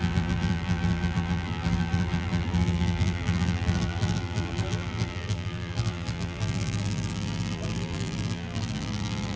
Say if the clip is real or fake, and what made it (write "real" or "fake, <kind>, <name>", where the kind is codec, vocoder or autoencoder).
fake, vocoder, BigVGAN v2